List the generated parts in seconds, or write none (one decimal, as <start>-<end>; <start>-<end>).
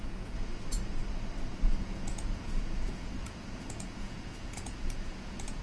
0.0-0.5; 1.8-5.6